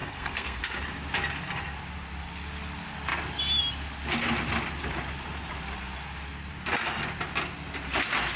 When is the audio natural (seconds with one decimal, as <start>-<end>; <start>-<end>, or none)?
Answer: 0.6-8.4